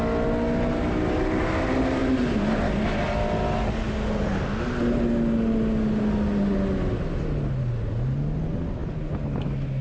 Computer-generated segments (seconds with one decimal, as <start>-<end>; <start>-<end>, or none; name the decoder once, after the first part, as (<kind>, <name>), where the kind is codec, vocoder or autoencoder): none